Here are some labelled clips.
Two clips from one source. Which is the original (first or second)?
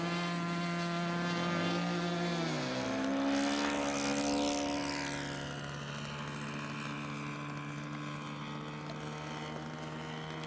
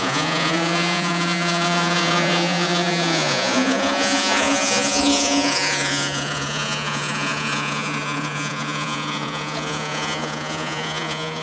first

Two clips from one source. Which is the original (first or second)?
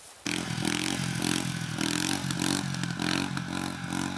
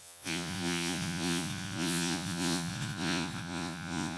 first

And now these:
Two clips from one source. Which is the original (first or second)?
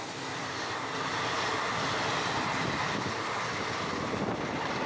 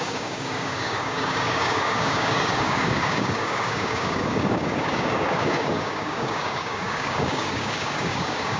first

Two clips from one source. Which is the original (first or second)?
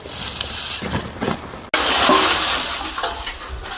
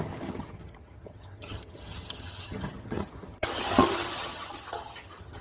first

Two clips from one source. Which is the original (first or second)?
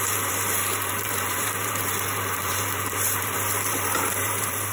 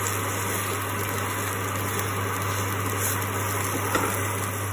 second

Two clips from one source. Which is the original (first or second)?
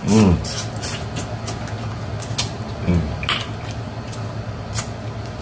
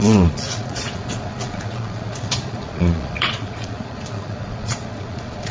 first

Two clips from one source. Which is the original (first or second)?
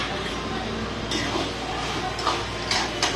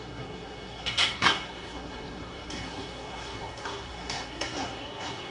first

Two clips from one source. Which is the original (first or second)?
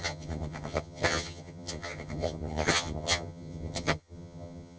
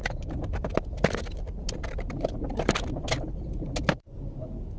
second